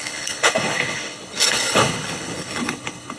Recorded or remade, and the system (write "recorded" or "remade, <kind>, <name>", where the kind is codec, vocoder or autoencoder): remade, codec, HILCodec